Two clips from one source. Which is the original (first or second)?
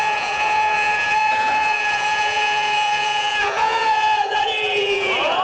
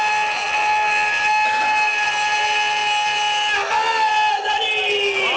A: second